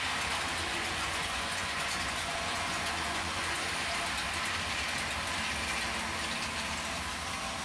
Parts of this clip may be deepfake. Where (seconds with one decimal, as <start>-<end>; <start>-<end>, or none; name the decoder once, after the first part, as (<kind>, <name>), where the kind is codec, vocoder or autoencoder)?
0.6-3.7 (vocoder, Vocos)